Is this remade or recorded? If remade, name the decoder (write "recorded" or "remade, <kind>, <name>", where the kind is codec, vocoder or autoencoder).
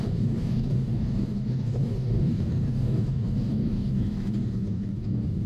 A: remade, codec, DAC